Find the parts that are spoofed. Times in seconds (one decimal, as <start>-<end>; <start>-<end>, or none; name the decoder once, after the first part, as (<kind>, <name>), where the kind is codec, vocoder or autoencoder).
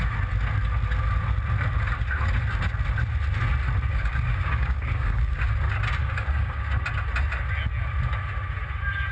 3.9-5.5 (codec, DAC); 6.0-6.6